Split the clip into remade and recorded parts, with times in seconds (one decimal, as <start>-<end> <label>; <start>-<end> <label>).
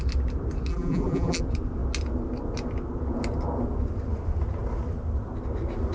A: 0.0-0.7 recorded; 0.7-1.4 remade; 1.4-5.9 recorded